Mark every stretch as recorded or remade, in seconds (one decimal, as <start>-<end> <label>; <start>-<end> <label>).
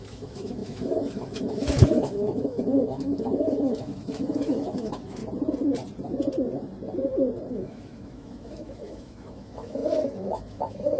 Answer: 0.0-5.2 remade; 5.2-7.5 recorded; 7.5-11.0 remade